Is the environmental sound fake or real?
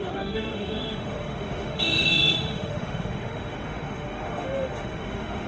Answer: fake